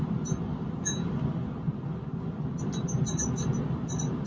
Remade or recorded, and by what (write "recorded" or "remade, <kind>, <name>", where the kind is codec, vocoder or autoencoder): recorded